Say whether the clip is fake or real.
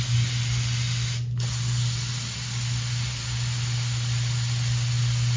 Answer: real